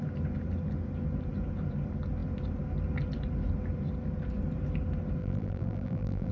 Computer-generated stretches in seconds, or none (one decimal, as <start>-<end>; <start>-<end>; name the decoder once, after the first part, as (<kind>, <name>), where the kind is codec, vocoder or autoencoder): 5.2-6.3 (vocoder, BigVGAN v2)